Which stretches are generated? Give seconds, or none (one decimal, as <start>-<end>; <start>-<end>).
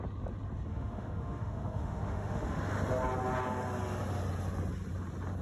0.7-2.6